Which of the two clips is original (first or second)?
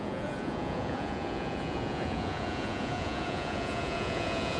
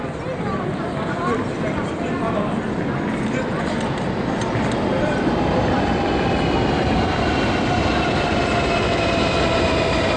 second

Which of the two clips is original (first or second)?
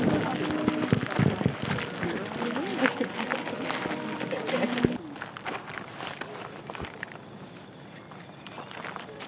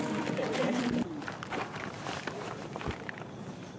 first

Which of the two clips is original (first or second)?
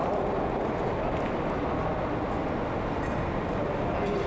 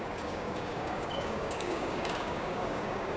first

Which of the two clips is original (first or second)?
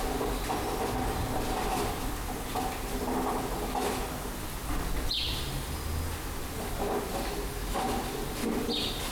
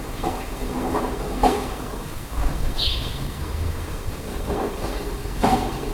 first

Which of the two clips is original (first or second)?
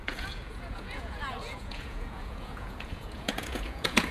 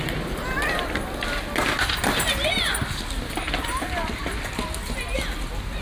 second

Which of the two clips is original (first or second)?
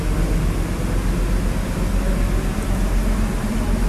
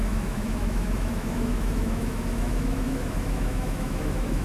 first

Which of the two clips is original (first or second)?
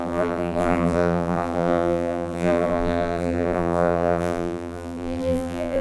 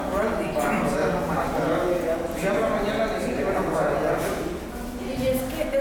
second